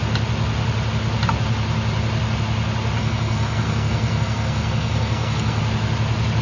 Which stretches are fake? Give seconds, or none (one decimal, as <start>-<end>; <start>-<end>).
3.0-5.6